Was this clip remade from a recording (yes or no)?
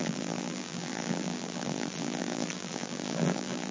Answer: yes